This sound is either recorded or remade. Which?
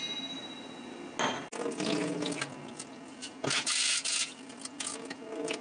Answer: recorded